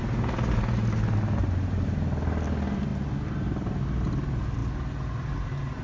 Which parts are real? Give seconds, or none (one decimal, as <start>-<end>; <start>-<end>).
0.0-1.4; 2.0-5.8